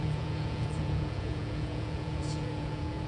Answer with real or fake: fake